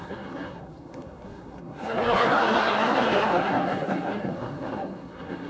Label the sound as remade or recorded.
remade